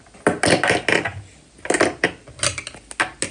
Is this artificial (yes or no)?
no